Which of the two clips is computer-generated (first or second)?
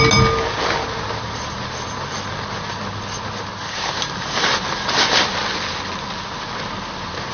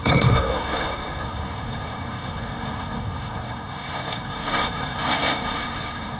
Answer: second